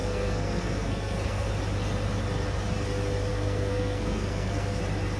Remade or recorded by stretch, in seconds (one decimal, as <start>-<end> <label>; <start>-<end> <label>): 0.0-1.5 remade; 1.5-3.3 recorded; 3.3-4.8 remade; 4.8-5.2 recorded

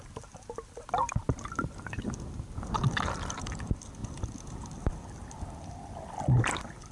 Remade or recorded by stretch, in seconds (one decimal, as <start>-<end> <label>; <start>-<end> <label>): 0.0-6.9 recorded

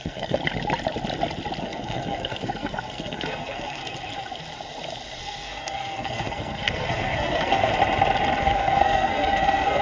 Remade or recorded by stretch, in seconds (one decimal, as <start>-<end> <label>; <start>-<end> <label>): 0.0-0.4 remade; 0.4-1.6 recorded; 1.6-3.8 remade; 3.8-5.2 recorded; 5.2-7.7 remade; 7.7-8.4 recorded; 8.4-9.8 remade

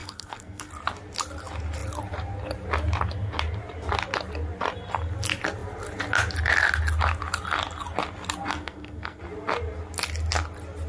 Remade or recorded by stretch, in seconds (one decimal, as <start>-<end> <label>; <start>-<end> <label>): 0.0-0.7 remade; 0.7-8.5 recorded; 8.5-9.2 remade; 9.2-10.9 recorded

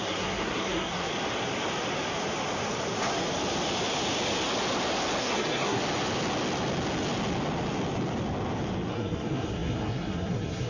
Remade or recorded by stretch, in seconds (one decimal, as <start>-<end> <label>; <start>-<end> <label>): 0.0-1.1 remade; 1.1-5.2 recorded; 5.2-5.8 remade; 5.8-8.9 recorded; 8.9-10.7 remade

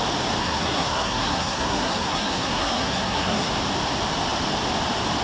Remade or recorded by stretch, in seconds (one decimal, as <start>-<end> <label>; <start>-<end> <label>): 0.0-0.4 recorded; 0.4-3.5 remade; 3.5-5.2 recorded